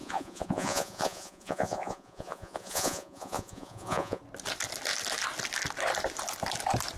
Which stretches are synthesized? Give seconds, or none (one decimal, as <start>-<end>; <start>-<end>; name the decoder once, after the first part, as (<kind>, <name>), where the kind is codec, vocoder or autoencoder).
0.0-4.2 (vocoder, Vocos)